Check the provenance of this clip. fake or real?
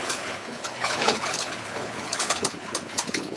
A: fake